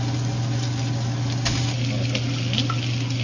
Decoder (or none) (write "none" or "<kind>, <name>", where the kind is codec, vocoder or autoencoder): none